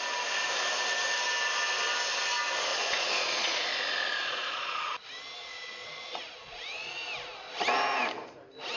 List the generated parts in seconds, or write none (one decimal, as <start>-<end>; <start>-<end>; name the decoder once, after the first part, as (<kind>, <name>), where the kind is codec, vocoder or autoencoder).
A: 2.7-3.6 (vocoder, Vocos); 4.2-4.8; 5.4-6.9